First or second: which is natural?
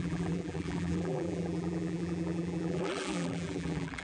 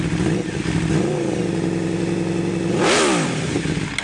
second